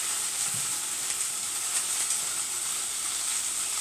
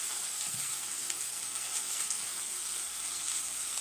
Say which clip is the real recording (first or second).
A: first